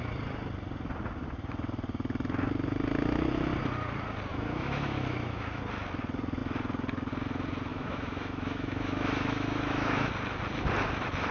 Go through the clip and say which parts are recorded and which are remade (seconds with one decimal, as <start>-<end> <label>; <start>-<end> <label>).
0.0-4.3 recorded; 4.3-5.6 remade; 5.6-7.7 recorded; 7.7-10.1 remade; 10.1-11.3 recorded